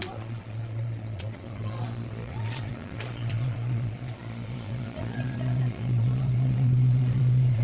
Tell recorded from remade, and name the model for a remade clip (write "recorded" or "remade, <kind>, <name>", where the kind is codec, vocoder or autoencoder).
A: remade, vocoder, Vocos